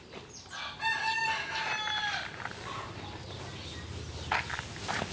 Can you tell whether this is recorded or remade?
recorded